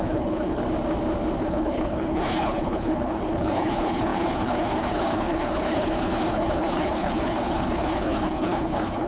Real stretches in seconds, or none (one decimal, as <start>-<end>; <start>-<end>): 0.6-1.4